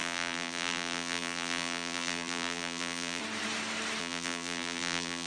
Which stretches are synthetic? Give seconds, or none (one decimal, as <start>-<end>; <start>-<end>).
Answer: 0.0-3.2; 4.0-5.3